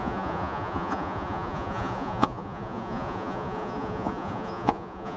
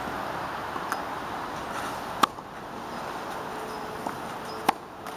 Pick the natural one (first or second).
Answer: second